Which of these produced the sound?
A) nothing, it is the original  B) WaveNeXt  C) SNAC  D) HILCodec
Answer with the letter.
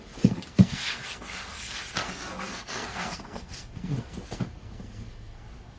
C